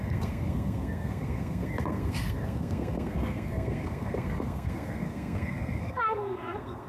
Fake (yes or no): yes